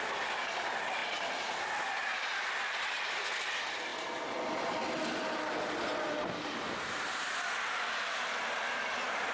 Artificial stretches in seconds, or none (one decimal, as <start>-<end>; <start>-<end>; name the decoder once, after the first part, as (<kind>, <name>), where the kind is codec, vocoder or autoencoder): none